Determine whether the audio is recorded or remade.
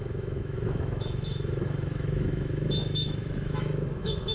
remade